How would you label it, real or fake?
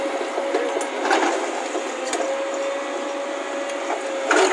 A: real